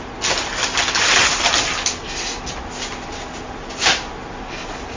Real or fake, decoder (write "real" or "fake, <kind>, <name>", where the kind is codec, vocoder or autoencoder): real